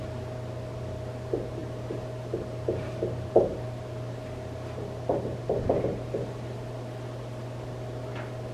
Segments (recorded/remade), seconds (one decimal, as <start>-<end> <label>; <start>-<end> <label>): 0.0-8.5 recorded